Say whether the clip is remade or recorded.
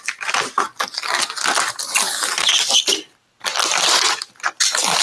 recorded